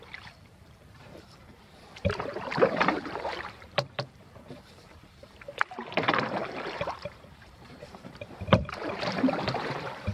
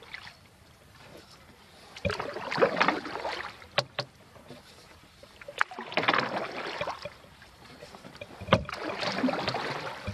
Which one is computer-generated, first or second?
first